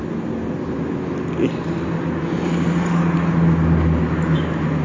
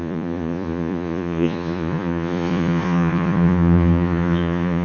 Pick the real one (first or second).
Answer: first